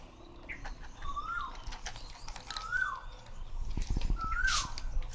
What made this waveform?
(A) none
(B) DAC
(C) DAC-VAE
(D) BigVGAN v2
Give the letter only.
A